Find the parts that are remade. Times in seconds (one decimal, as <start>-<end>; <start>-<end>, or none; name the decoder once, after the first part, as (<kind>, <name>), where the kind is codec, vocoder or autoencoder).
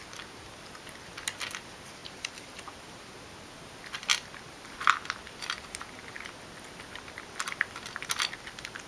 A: 2.0-3.2 (vocoder, BigVGAN v2)